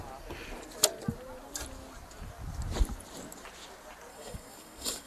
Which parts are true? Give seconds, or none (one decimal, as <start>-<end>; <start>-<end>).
0.0-4.1

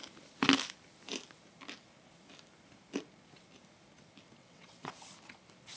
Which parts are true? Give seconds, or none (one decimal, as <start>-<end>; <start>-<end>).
0.0-4.4; 5.1-5.8

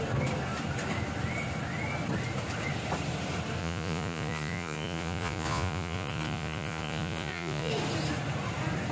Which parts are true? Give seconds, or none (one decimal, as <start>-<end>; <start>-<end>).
0.0-3.6; 7.7-8.9